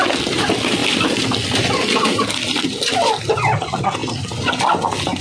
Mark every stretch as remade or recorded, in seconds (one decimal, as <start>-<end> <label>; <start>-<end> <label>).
0.0-5.2 recorded